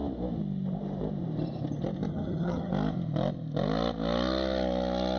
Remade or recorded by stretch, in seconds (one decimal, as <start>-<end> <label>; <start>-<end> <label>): 0.0-2.1 recorded; 2.1-2.7 remade; 2.7-5.2 recorded